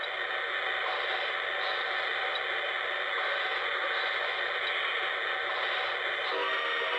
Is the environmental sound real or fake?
real